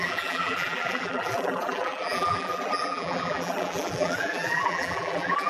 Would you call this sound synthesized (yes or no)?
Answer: yes